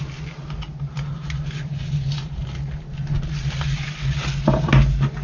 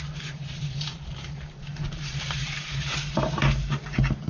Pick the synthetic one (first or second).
second